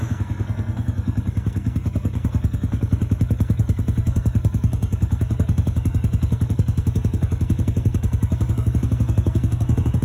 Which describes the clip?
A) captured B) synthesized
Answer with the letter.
B